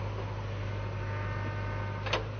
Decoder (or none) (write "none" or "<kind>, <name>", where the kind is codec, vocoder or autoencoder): none